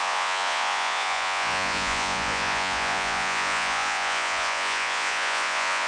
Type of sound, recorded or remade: remade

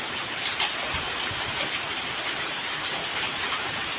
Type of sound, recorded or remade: remade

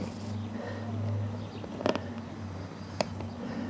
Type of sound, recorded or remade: recorded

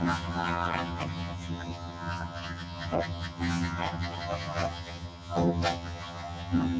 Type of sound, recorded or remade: remade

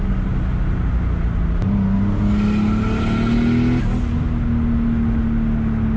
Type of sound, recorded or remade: recorded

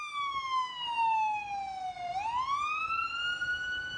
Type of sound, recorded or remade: recorded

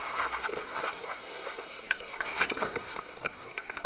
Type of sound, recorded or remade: remade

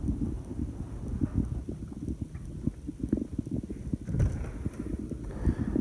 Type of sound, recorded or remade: recorded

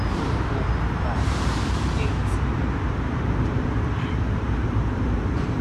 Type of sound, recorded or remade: remade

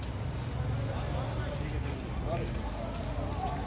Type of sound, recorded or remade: recorded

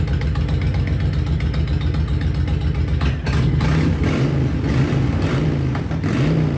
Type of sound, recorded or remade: recorded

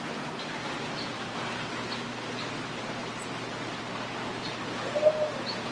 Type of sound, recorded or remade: recorded